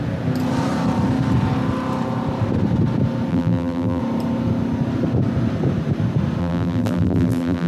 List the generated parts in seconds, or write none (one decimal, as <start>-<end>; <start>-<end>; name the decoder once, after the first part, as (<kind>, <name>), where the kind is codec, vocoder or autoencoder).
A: 3.3-4.0 (vocoder, BigVGAN v2); 6.4-7.7